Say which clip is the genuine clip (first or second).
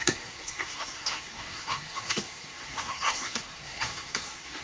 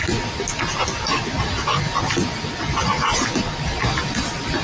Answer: second